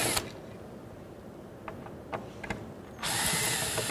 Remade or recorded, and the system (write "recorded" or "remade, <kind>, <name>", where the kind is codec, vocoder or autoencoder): recorded